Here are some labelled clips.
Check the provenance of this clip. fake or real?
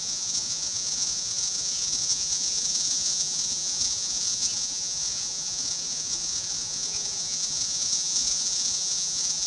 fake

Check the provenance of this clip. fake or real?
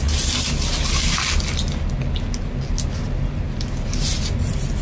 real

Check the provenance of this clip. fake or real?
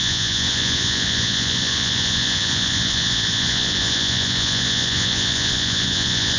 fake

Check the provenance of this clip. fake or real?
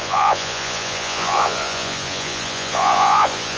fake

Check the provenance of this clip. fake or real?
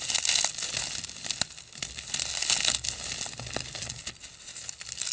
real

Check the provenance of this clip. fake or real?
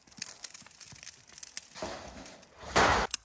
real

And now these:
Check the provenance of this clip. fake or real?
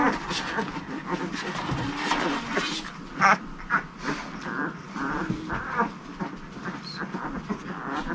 real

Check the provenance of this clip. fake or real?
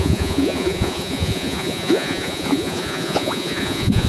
fake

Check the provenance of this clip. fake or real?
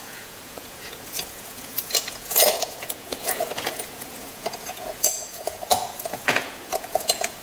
fake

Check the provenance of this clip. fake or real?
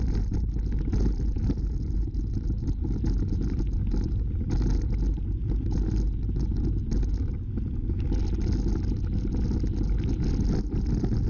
real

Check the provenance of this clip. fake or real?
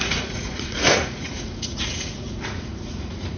fake